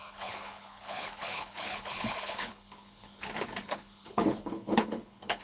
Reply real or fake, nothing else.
fake